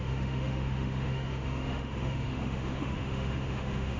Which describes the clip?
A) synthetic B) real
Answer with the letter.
A